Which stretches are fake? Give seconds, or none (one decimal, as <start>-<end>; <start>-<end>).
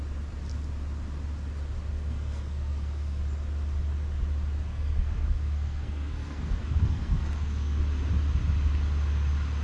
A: 1.9-3.2; 4.7-7.8